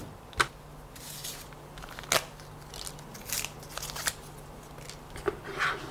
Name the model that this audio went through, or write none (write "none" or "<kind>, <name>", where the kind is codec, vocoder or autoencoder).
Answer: none